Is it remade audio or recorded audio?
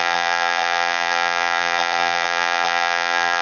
remade